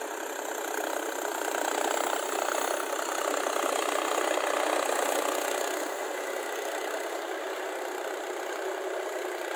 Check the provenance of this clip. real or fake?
real